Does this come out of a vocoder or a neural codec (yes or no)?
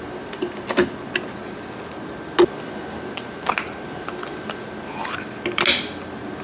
no